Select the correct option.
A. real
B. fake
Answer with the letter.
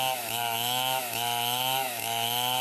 B